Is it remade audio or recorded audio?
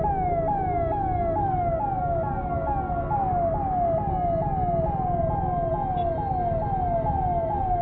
recorded